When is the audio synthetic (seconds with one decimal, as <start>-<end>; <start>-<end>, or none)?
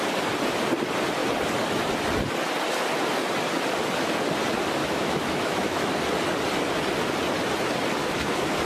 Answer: 4.8-5.9; 8.0-8.6